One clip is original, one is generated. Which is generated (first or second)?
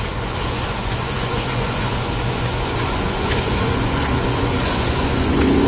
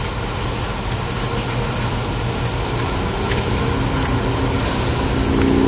first